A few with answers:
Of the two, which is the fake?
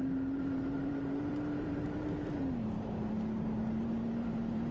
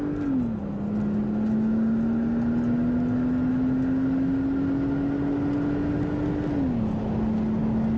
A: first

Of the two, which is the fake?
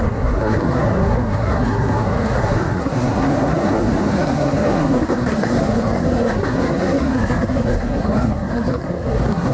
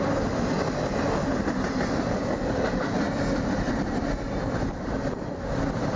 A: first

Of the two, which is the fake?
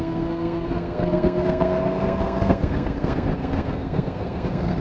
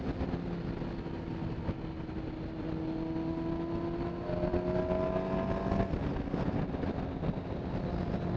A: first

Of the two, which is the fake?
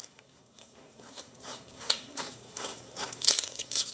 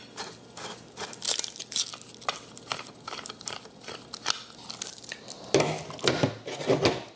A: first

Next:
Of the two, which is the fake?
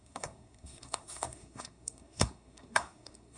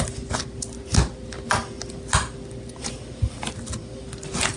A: first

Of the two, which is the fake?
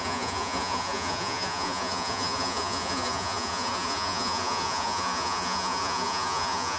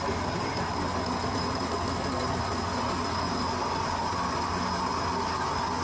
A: first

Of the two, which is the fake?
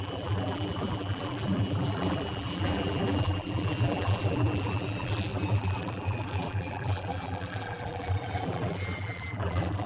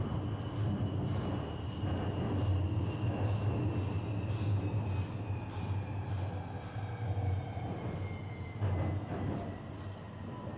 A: first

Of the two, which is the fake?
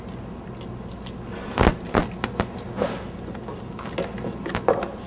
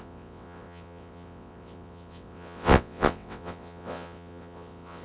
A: second